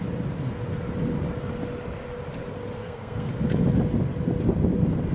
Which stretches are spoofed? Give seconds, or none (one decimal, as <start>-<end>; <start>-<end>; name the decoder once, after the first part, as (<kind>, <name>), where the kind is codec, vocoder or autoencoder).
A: 2.8-3.3 (codec, SNAC)